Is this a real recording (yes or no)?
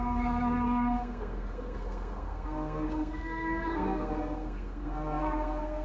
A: no